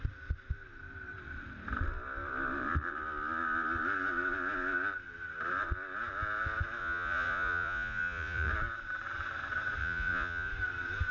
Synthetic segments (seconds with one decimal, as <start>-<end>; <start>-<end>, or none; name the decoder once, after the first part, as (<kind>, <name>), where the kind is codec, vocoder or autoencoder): 6.8-8.5 (vocoder, Vocos); 9.8-10.5